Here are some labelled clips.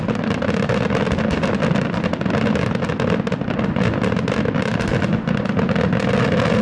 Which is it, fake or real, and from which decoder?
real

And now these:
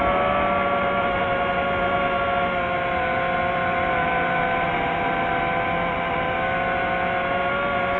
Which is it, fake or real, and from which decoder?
real